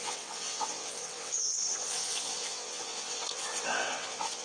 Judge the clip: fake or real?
fake